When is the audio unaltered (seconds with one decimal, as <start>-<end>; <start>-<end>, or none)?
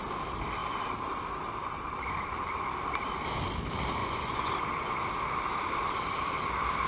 0.0-4.0; 4.5-6.9